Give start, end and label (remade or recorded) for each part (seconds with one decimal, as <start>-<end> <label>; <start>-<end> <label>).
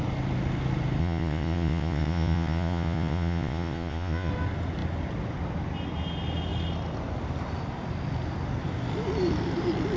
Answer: 0.0-1.0 recorded; 1.0-4.3 remade; 4.3-10.0 recorded